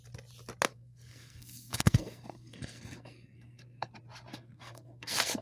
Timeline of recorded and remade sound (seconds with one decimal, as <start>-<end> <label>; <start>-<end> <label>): 0.0-0.7 recorded; 0.7-3.9 remade; 3.9-4.3 recorded; 4.3-5.4 remade

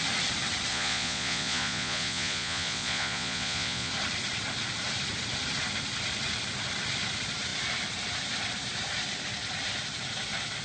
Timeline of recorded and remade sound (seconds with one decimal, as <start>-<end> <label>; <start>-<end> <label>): 0.0-0.7 recorded; 0.7-3.9 remade; 3.9-10.6 recorded